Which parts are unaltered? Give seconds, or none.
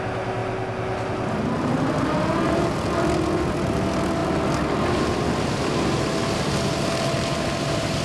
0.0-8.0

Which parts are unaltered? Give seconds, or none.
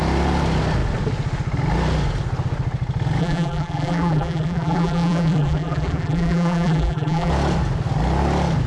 0.0-3.2; 7.3-8.7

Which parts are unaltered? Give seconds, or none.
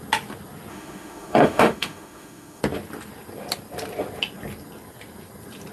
0.0-0.7; 2.6-5.7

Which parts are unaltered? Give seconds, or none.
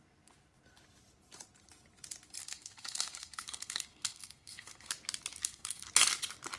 0.0-2.4; 4.9-5.4; 5.9-6.6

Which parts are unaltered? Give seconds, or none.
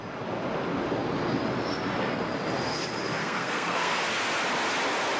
0.0-3.2; 4.0-5.2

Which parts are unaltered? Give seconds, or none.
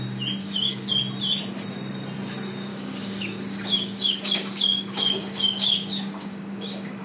0.0-0.4; 0.9-2.7